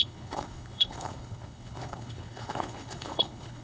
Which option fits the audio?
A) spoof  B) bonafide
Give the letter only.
A